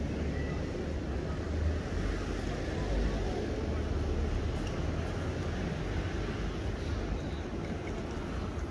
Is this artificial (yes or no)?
no